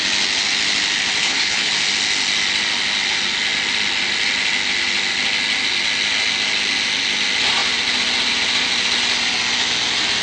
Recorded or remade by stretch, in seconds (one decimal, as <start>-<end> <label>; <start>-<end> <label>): 0.0-1.2 recorded; 1.2-1.7 remade; 1.7-10.2 recorded